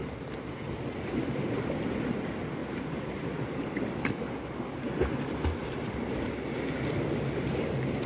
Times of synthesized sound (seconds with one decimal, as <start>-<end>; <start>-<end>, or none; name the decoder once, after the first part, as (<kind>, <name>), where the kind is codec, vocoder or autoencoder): 2.6-4.1 (vocoder, BigVGAN v2)